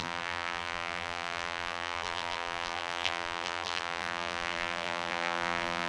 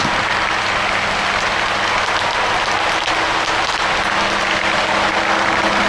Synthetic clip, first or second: first